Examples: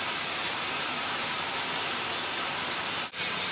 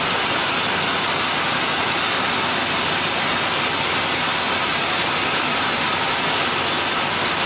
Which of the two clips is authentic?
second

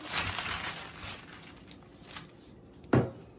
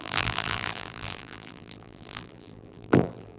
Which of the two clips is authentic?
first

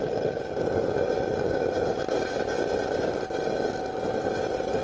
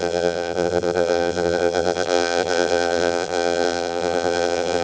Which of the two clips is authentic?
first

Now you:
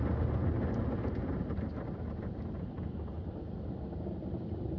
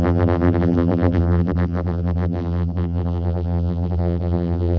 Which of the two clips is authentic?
first